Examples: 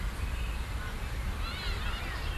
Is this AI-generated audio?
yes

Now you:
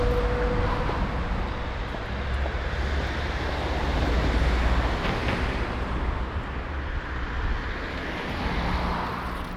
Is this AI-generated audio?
no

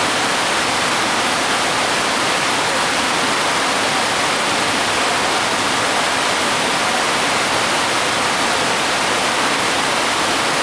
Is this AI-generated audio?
yes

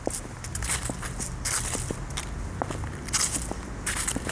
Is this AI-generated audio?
no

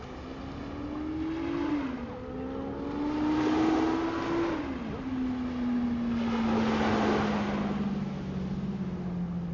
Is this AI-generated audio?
no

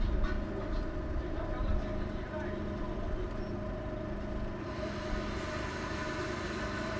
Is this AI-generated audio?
no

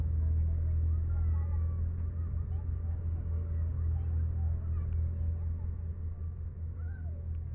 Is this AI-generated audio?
no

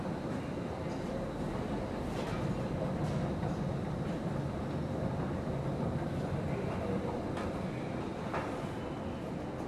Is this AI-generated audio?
no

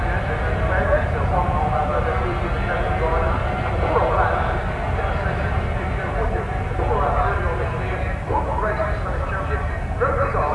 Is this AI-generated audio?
no